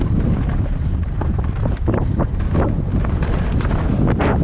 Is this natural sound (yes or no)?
yes